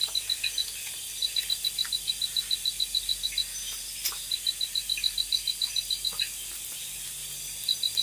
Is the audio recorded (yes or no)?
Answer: yes